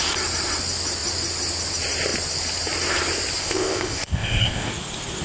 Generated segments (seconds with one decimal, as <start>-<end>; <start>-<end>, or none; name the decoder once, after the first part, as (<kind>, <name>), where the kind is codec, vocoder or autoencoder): 3.4-4.7 (codec, ZipCodec)